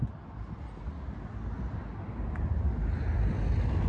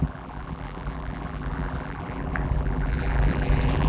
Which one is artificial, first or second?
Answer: second